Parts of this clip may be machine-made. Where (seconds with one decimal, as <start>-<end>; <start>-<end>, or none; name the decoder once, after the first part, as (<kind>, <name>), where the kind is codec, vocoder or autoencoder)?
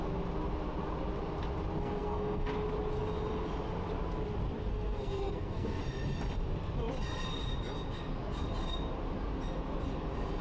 1.8-2.5 (codec, SNAC); 4.7-5.8